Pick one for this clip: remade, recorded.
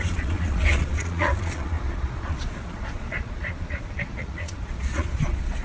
remade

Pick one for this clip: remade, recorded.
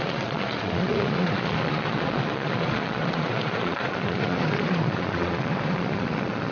remade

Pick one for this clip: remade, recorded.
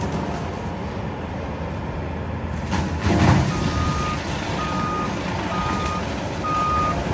recorded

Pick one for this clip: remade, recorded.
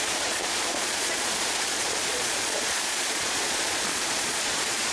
remade